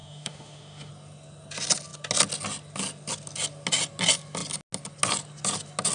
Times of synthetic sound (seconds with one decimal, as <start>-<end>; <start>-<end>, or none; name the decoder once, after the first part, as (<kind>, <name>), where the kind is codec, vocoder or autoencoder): 0.0-0.9 (autoencoder, DAC-VAE)